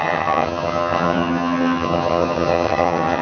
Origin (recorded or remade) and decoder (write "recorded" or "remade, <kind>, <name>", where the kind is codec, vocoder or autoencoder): remade, vocoder, HiFi-GAN